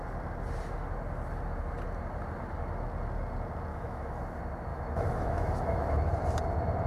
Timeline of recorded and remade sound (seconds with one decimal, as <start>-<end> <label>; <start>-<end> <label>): 0.0-3.7 recorded; 3.7-4.2 remade; 4.2-4.7 recorded; 4.7-6.1 remade; 6.1-6.9 recorded